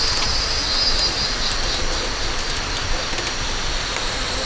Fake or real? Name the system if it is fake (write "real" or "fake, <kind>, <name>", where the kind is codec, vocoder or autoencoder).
real